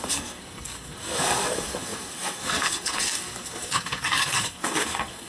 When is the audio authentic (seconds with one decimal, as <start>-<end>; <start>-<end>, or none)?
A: none